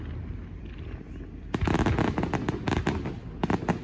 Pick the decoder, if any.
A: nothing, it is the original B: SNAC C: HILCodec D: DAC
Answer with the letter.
A